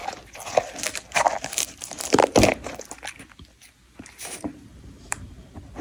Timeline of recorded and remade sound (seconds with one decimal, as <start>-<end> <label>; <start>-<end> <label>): 0.0-1.4 recorded; 1.4-2.2 remade; 2.2-4.1 recorded; 4.1-5.8 remade